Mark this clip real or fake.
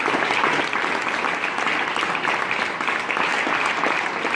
real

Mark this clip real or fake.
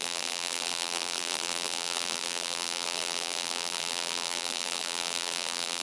fake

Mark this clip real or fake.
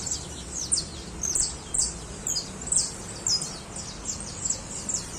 real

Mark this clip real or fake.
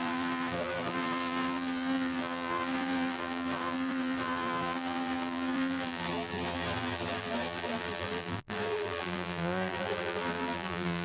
fake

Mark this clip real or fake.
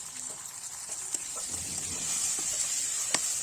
fake